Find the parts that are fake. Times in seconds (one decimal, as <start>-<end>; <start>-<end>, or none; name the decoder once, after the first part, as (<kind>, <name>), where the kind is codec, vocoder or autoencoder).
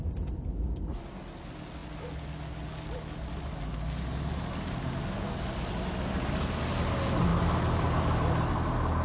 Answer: none